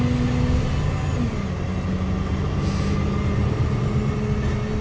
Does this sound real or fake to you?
real